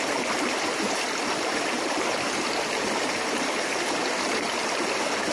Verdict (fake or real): fake